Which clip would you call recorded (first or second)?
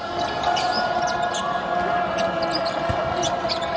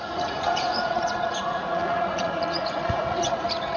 first